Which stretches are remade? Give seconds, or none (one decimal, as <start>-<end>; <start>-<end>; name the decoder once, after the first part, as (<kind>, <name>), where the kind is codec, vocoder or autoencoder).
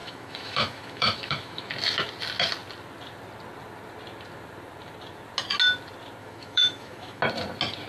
0.0-1.7 (autoencoder, DAC-VAE); 6.2-7.2